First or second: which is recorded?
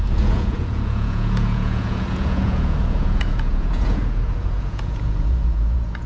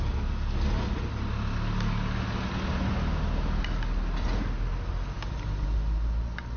second